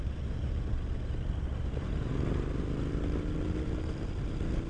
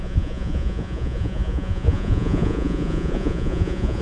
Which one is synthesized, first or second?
second